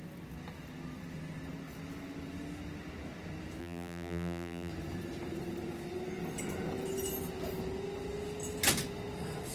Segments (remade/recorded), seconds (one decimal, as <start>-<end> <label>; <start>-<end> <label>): 0.0-3.6 recorded; 3.6-4.7 remade; 4.7-9.5 recorded